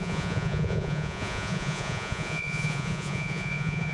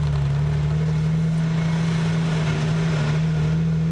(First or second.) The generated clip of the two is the first